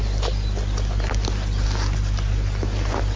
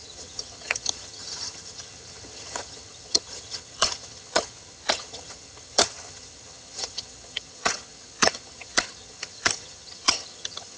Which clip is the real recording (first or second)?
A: first